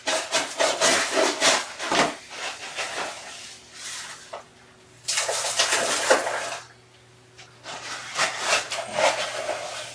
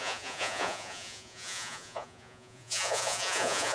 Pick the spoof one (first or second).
second